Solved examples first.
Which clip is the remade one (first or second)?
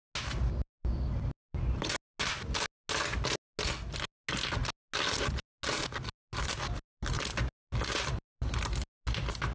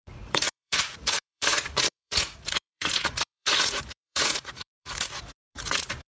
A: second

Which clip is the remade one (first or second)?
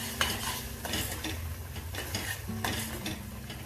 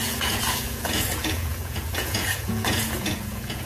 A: second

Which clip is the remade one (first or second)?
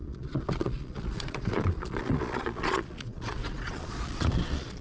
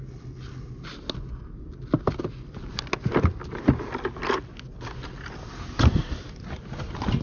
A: first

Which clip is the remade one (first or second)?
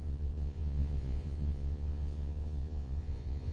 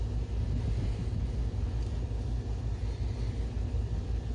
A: first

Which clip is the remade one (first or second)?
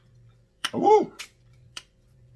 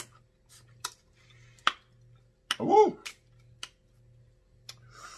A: first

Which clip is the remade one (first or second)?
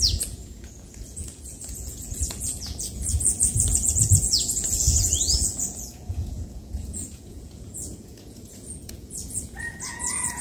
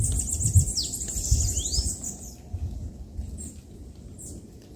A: first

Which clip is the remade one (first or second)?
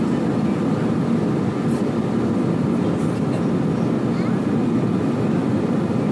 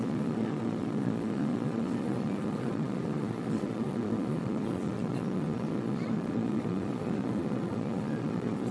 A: second